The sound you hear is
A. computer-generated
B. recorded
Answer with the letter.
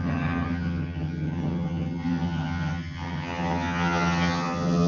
A